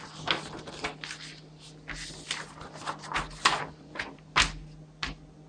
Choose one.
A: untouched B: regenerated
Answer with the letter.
A